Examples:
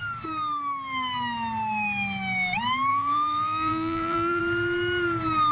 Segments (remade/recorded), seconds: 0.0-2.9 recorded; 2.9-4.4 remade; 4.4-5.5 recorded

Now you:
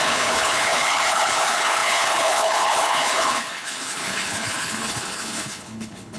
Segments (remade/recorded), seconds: 0.0-6.2 remade

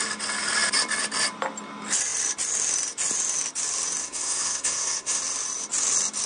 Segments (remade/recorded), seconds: 0.0-4.0 recorded; 4.0-5.2 remade; 5.2-6.3 recorded

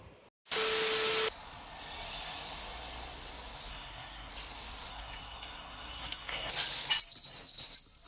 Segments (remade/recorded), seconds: 0.0-3.7 recorded; 3.7-4.3 remade; 4.3-4.9 recorded; 4.9-6.5 remade; 6.5-8.1 recorded

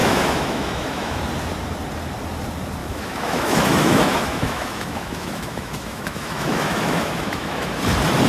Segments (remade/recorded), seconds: 0.0-1.2 remade; 1.2-2.8 recorded; 2.8-7.8 remade; 7.8-8.3 recorded

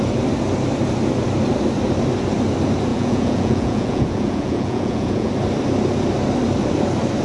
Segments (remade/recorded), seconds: 0.0-2.9 recorded; 2.9-5.3 remade; 5.3-7.2 recorded